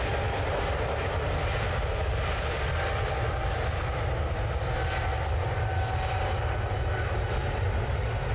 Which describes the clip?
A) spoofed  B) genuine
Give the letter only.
B